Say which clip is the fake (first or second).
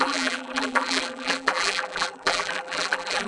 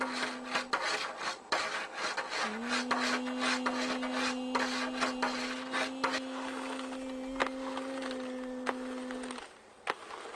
first